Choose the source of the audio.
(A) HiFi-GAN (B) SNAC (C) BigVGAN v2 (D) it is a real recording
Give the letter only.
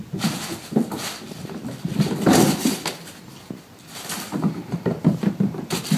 D